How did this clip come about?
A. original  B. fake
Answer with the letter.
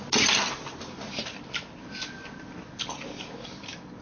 A